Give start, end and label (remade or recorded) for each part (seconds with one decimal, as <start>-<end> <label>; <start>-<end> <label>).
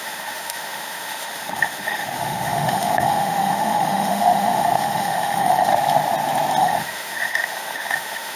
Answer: 0.0-5.7 remade; 5.7-6.6 recorded; 6.6-8.4 remade